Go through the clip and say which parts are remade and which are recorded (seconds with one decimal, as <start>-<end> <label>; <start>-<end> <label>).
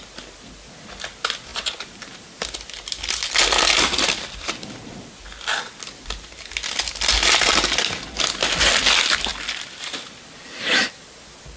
0.0-1.5 recorded; 1.5-6.3 remade; 6.3-9.3 recorded; 9.3-10.3 remade; 10.3-11.6 recorded